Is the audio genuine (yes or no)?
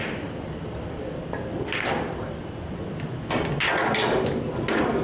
yes